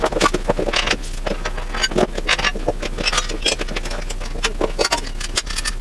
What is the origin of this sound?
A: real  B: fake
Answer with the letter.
A